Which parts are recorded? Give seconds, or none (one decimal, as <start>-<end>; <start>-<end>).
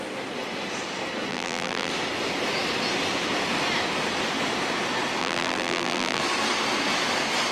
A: 0.0-1.3; 1.9-5.2; 6.2-7.5